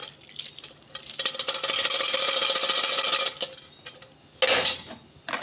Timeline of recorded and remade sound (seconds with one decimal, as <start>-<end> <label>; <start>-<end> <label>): 0.0-5.4 recorded